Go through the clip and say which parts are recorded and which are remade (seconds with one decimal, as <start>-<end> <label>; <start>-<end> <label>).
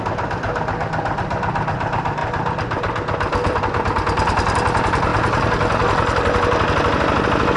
0.0-2.2 recorded; 2.2-3.6 remade; 3.6-7.6 recorded